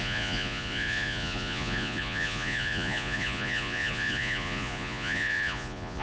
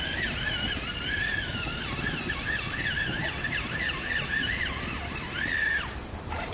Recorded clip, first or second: second